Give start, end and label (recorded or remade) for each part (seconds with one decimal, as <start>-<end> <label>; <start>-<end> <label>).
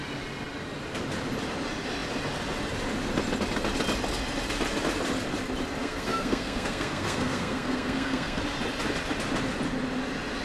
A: 0.0-5.8 recorded; 5.8-8.4 remade; 8.4-10.4 recorded